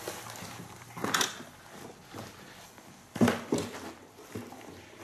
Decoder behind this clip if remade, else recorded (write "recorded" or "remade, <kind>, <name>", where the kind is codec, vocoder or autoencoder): recorded